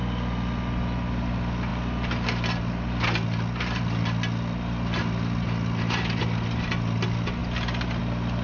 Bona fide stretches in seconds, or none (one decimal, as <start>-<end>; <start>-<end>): 0.0-8.4

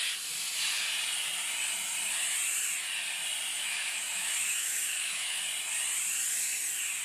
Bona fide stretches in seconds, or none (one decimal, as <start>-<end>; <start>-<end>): 0.0-3.5; 5.4-7.0

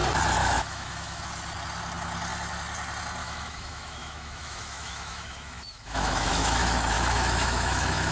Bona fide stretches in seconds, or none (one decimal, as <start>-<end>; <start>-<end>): 0.0-0.4; 1.2-3.2

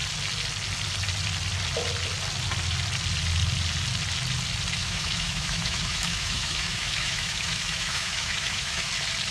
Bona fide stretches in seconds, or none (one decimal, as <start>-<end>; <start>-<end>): 0.0-4.8; 8.9-9.3

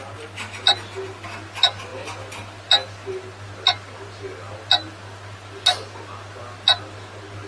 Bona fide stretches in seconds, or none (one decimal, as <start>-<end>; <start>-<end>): 0.0-7.5